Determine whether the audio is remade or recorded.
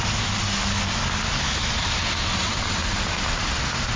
recorded